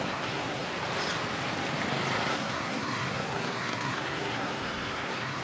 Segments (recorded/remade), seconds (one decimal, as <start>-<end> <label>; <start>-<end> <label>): 0.0-0.7 remade; 0.7-2.3 recorded; 2.3-5.4 remade